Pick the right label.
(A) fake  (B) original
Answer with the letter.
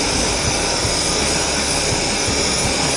B